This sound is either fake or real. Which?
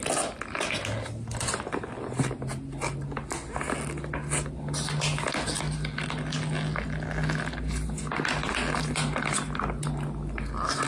real